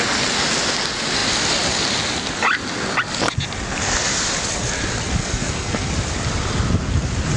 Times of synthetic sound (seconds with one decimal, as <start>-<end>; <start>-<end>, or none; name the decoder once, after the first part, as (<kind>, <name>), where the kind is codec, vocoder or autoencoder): 5.2-5.9 (codec, SNAC)